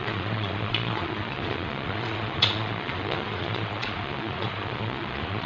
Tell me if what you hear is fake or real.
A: fake